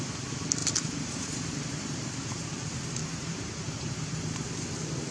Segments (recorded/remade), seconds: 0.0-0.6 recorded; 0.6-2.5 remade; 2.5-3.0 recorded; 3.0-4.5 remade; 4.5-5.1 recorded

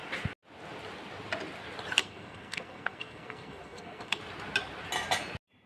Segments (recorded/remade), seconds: 0.0-2.0 recorded; 2.0-4.2 remade; 4.2-5.7 recorded

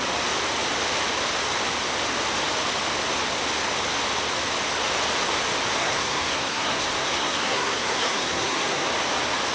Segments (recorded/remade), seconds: 0.0-5.8 recorded; 5.8-8.9 remade; 8.9-9.5 recorded

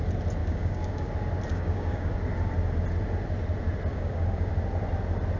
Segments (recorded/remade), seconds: 0.0-0.4 recorded; 0.4-1.1 remade; 1.1-1.5 recorded; 1.5-2.1 remade; 2.1-3.9 recorded; 3.9-4.5 remade; 4.5-5.4 recorded

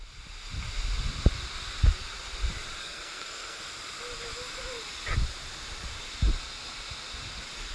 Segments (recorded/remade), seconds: 0.0-2.8 recorded; 2.8-3.6 remade; 3.6-7.7 recorded

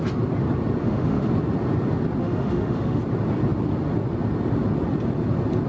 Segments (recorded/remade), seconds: 0.0-0.8 recorded; 0.8-1.3 remade; 1.3-2.2 recorded; 2.2-3.0 remade; 3.0-5.7 recorded

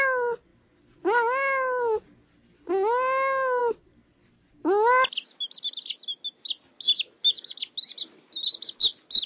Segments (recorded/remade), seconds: 0.0-9.3 recorded